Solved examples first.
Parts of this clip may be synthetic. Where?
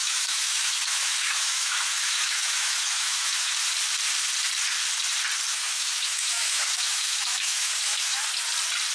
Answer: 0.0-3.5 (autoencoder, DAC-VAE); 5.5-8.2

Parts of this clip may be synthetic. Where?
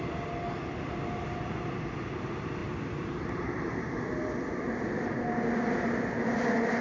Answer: none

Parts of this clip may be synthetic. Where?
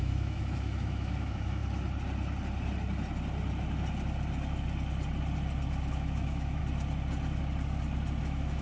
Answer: 0.0-1.6 (autoencoder, DAC-VAE); 5.9-6.6; 8.2-8.6